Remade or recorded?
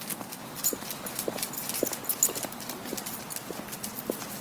recorded